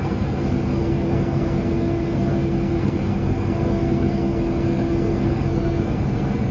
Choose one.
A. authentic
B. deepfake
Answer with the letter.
B